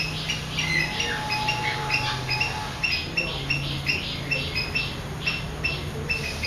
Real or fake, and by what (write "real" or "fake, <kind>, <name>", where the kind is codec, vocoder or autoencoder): real